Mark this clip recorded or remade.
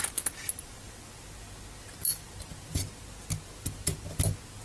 recorded